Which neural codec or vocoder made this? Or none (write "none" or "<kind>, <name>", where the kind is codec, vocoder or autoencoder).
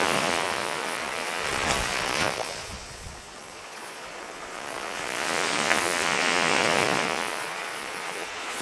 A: vocoder, Vocos